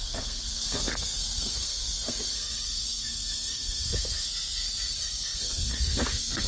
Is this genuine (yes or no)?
no